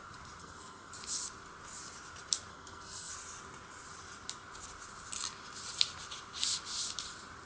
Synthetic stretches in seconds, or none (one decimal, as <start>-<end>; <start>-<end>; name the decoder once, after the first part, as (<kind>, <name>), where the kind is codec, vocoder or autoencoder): 0.4-0.9 (codec, SNAC); 2.5-3.1